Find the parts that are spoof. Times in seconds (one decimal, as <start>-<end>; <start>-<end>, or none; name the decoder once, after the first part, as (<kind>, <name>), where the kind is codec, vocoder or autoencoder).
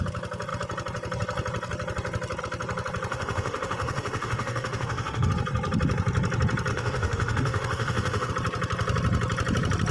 3.1-5.3 (autoencoder, DAC-VAE); 6.7-8.3